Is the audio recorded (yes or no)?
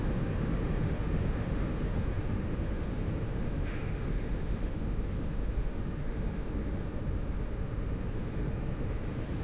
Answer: no